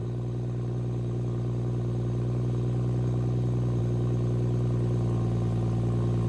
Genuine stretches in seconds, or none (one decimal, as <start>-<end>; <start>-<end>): 0.0-6.3